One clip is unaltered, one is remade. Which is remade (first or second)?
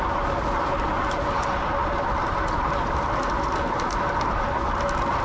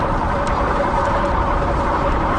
second